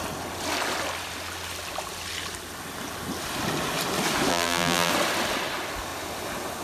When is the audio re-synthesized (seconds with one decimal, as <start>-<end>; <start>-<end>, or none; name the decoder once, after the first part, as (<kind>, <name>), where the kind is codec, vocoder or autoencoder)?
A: 4.3-4.9 (vocoder, BigVGAN v2)